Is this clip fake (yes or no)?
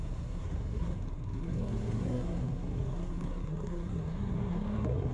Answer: yes